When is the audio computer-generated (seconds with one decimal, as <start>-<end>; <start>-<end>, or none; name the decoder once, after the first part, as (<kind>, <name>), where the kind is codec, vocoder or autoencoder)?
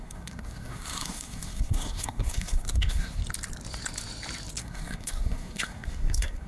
0.0-3.2 (codec, SNAC); 4.6-6.5